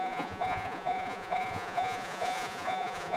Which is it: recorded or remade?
remade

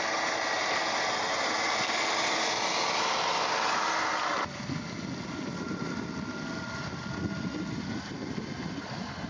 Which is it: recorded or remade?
recorded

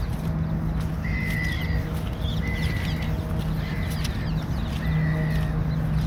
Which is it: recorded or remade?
recorded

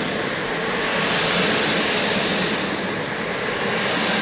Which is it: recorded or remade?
recorded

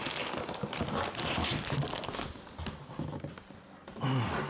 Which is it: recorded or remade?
recorded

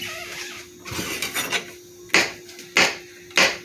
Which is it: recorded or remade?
recorded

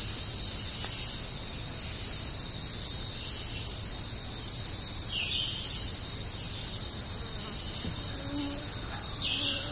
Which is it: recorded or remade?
recorded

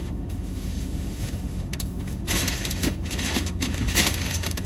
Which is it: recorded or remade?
remade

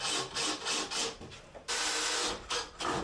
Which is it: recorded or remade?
recorded